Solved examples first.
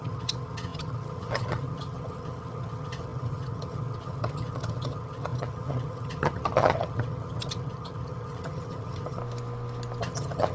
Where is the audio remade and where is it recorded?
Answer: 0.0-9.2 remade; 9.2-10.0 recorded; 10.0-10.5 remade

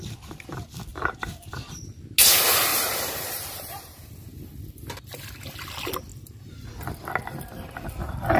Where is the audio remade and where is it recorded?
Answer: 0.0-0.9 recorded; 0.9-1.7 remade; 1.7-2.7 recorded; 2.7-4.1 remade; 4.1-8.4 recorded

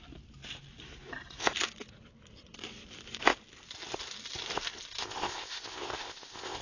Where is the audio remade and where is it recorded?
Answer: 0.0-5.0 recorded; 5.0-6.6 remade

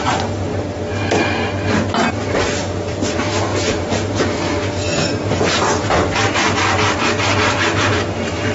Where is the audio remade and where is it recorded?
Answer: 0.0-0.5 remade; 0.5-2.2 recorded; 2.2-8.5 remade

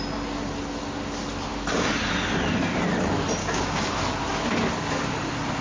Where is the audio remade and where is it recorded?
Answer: 0.0-3.4 recorded; 3.4-3.9 remade; 3.9-5.6 recorded

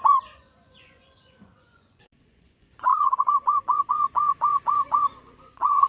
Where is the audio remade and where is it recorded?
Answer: 0.0-5.9 remade

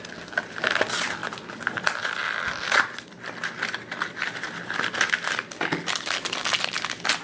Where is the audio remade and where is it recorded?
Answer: 0.0-1.2 recorded; 1.2-3.5 remade; 3.5-7.2 recorded

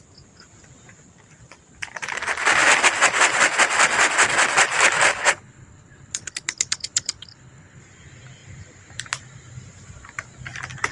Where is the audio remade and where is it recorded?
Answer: 0.0-5.1 recorded; 5.1-7.8 remade; 7.8-10.9 recorded